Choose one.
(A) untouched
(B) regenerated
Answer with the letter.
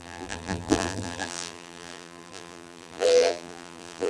B